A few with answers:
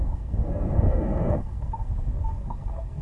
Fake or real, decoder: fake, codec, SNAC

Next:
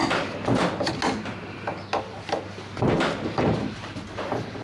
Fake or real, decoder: real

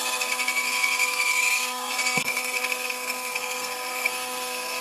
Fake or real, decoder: fake, codec, SNAC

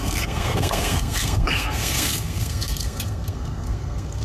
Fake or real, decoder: fake, codec, SNAC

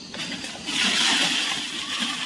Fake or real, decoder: real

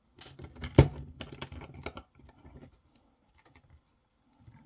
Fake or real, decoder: real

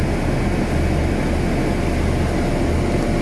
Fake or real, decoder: real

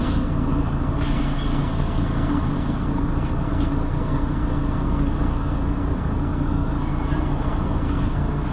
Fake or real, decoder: fake, codec, SNAC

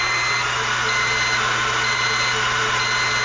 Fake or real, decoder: real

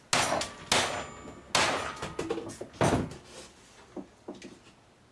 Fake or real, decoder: real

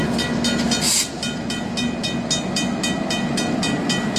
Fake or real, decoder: real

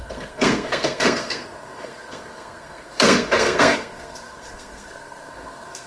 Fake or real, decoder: fake, codec, SNAC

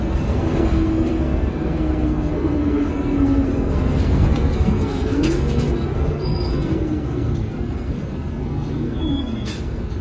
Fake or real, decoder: fake, codec, SNAC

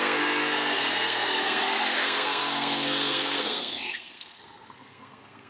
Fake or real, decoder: fake, codec, SNAC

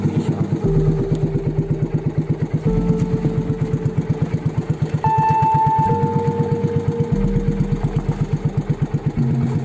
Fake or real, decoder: real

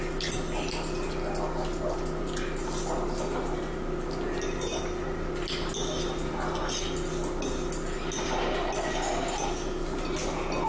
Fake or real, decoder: real